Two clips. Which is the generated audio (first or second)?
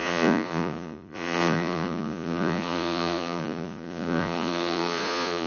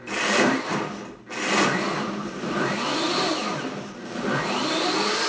first